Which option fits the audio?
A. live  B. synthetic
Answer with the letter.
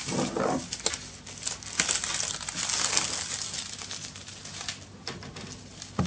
A